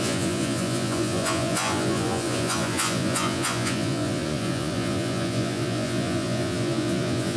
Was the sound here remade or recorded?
remade